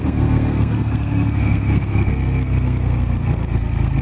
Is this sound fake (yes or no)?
yes